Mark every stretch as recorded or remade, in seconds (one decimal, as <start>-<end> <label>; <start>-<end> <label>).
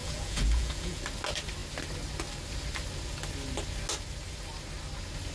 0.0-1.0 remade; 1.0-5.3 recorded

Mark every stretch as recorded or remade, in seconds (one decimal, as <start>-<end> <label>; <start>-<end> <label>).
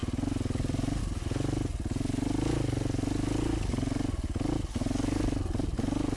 0.0-6.2 recorded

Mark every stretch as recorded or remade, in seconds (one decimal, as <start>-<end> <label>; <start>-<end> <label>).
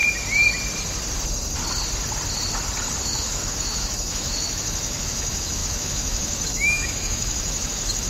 0.0-3.0 recorded; 3.0-8.1 remade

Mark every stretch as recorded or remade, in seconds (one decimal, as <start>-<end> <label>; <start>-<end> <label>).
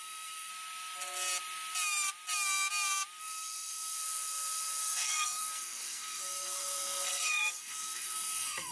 0.0-0.5 remade; 0.5-3.2 recorded; 3.2-8.7 remade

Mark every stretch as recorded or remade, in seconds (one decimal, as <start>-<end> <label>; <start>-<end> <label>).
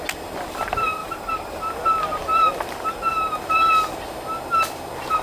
0.0-1.0 recorded; 1.0-1.6 remade; 1.6-5.2 recorded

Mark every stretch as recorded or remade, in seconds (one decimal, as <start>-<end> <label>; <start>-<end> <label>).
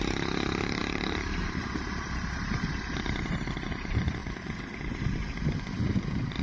0.0-4.2 remade; 4.2-5.7 recorded; 5.7-6.4 remade